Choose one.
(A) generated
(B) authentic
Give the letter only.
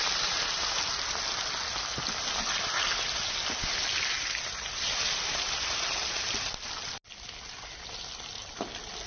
B